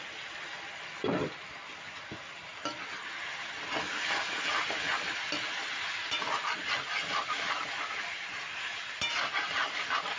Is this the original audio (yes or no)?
yes